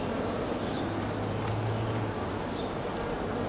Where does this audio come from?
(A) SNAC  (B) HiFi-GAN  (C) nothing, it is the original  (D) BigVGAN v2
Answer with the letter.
C